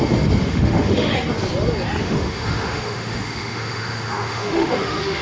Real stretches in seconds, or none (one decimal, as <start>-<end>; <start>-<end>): 0.0-0.4; 1.1-2.0

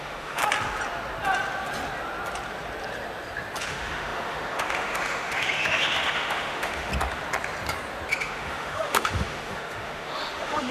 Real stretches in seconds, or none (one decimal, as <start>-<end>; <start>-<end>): 0.4-3.6; 6.9-8.1

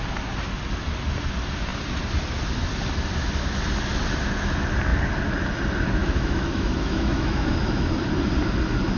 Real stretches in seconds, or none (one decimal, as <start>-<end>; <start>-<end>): 0.0-6.0; 8.0-9.0